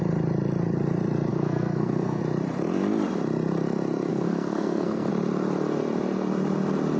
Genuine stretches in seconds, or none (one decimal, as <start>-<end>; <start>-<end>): 0.0-1.3; 2.2-4.1; 5.1-7.0